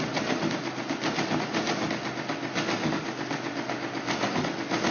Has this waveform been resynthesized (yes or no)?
no